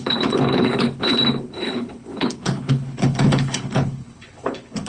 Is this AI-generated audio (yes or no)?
yes